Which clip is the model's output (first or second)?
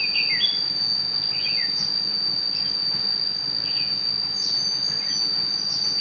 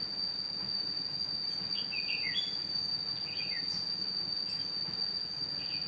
second